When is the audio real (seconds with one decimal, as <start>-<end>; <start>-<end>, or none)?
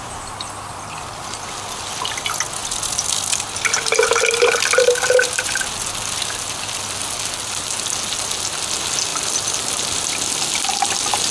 0.0-11.3